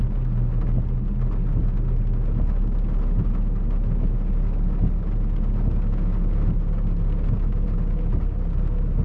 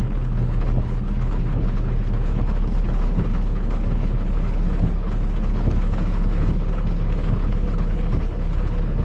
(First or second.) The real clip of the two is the first